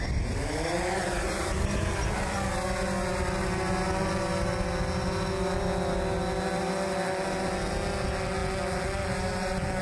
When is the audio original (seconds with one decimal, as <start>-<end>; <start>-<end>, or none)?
0.0-9.8